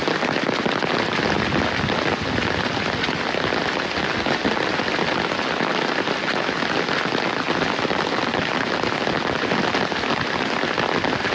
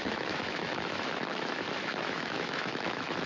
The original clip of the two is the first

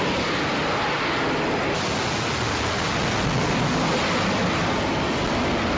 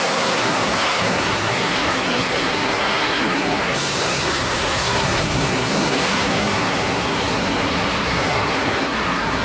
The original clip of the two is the first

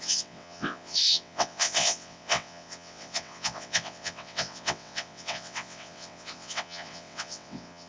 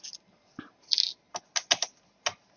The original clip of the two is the second